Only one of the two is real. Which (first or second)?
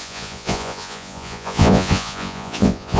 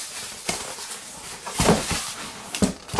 second